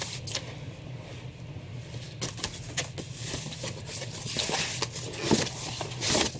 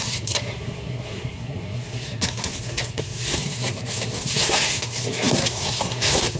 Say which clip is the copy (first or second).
second